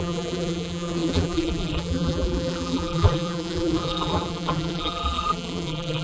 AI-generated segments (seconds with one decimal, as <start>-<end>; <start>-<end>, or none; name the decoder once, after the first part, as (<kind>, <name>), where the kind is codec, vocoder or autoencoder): 0.0-6.0 (vocoder, BigVGAN v2)